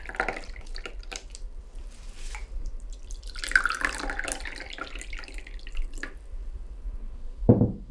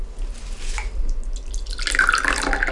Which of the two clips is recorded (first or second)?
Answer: second